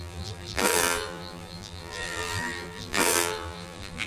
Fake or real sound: fake